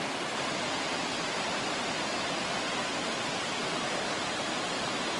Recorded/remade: recorded